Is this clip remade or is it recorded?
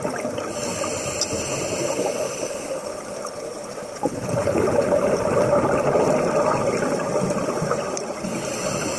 recorded